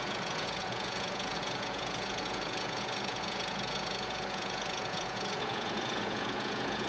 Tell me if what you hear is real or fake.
fake